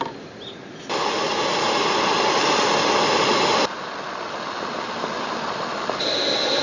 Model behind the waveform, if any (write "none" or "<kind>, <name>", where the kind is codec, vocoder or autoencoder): none